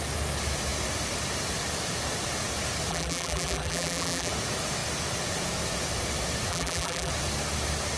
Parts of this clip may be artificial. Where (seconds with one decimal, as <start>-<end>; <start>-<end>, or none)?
2.9-4.3; 6.5-7.1